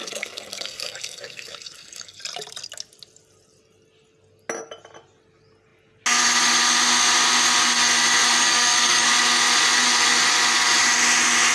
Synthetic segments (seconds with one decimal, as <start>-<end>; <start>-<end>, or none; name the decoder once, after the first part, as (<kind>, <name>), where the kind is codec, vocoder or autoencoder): 0.0-2.2 (codec, SNAC); 8.4-9.1